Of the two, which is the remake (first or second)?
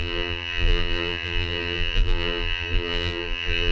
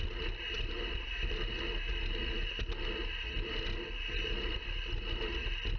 first